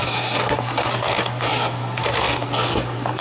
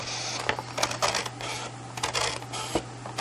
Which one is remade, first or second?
first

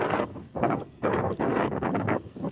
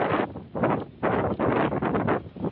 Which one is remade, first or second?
first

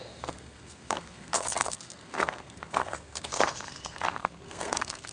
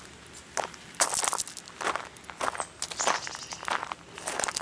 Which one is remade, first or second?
first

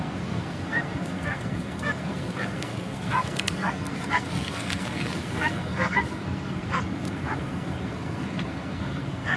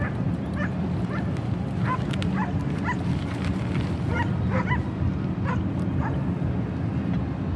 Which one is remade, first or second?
first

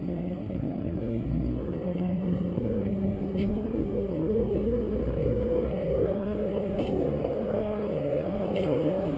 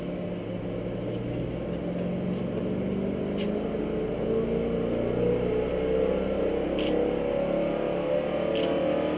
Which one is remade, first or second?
first